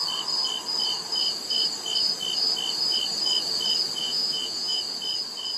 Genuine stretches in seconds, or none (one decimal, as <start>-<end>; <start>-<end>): 0.0-4.0; 4.8-5.6